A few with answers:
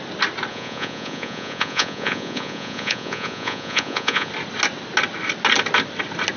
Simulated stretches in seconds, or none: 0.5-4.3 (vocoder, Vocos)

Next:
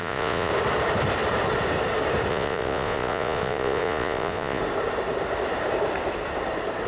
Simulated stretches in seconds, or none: 0.0-0.5 (vocoder, Vocos); 2.3-4.6

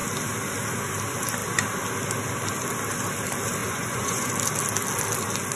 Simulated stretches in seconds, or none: 3.6-4.3 (vocoder, Vocos)

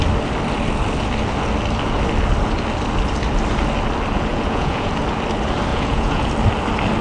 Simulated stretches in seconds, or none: 4.3-4.9 (vocoder, Vocos); 5.7-6.3

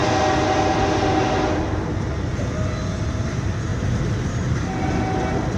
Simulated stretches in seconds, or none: none

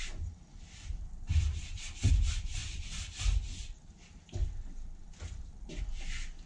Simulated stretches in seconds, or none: none

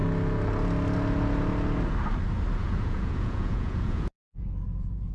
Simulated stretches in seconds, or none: 2.6-5.1 (vocoder, Vocos)